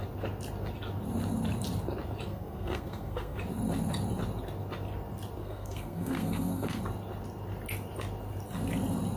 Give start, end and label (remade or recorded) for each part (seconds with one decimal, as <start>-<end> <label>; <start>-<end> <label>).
0.0-2.3 recorded; 2.3-3.4 remade; 3.4-5.4 recorded; 5.4-6.8 remade; 6.8-9.2 recorded